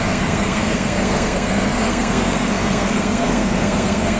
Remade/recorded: remade